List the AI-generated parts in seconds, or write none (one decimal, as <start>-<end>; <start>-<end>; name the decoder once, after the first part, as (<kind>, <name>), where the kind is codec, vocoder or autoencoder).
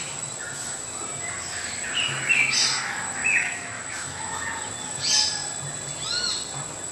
3.2-4.5 (autoencoder, DAC-VAE)